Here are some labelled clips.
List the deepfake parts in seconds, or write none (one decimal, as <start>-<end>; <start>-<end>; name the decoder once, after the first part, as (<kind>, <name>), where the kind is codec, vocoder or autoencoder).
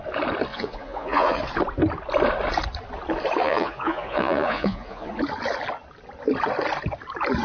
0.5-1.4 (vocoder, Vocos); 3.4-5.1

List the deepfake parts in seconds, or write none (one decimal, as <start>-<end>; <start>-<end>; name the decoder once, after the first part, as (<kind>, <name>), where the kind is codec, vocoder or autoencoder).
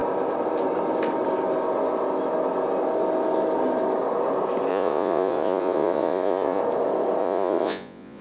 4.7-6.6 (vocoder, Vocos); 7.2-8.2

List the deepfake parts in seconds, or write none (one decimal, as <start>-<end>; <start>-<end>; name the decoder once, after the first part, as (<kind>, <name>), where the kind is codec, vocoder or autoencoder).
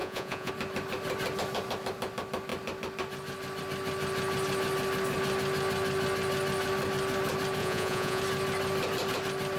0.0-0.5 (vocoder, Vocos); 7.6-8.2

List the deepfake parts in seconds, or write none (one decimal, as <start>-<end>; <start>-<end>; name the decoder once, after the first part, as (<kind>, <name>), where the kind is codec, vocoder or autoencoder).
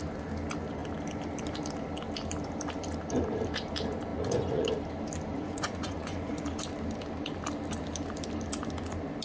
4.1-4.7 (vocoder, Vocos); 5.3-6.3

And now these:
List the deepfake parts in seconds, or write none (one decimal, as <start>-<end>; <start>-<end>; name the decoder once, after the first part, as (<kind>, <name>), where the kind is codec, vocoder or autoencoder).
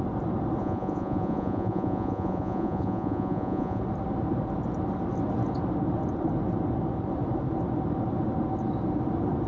0.6-3.8 (vocoder, Vocos)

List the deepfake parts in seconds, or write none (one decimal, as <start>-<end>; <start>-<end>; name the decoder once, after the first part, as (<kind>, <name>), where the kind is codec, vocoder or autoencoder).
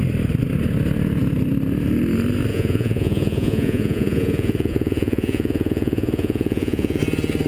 2.5-7.0 (vocoder, Vocos)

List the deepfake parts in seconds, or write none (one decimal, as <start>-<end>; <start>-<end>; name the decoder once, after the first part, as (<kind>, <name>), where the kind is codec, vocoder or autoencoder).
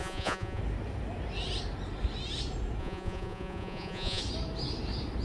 0.0-0.6 (vocoder, Vocos); 2.8-4.2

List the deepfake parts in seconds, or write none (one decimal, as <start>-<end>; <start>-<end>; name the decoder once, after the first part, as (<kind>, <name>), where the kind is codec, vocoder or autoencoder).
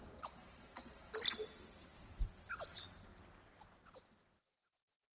0.0-1.1 (vocoder, Vocos)